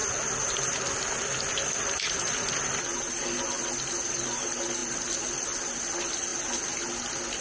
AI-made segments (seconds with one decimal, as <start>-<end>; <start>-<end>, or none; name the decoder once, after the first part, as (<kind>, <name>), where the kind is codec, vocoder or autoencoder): none